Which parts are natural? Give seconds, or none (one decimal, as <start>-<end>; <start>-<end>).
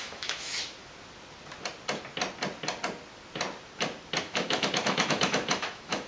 0.5-4.2